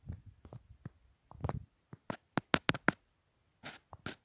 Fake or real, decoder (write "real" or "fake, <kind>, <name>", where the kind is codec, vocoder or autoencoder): real